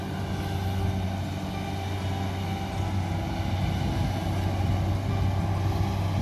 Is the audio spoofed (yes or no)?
no